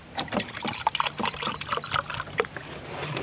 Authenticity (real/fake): real